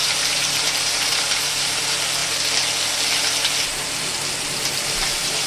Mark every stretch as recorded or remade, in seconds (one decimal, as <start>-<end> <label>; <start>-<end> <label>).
0.0-1.8 remade; 1.8-5.5 recorded